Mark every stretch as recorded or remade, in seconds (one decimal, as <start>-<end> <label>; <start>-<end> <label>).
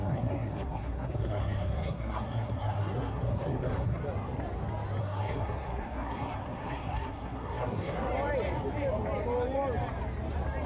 0.0-4.0 remade; 4.0-5.0 recorded; 5.0-8.1 remade; 8.1-10.7 recorded